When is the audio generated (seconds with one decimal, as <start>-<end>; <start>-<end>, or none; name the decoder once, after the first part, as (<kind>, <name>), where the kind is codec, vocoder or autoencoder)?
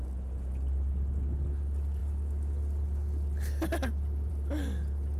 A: none